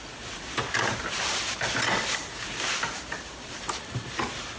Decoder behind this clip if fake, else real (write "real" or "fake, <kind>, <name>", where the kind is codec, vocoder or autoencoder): real